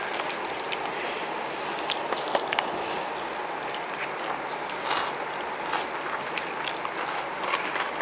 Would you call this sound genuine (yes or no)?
yes